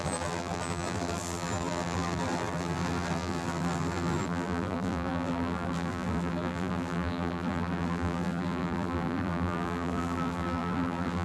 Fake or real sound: fake